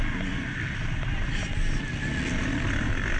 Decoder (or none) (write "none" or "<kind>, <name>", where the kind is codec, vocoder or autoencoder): none